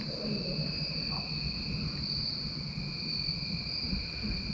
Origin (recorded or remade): recorded